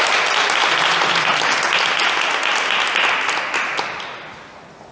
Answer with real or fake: real